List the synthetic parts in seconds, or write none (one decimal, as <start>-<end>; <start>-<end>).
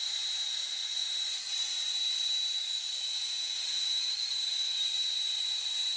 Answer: 1.0-1.9